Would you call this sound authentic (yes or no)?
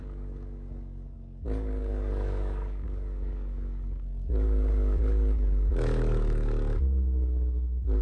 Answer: no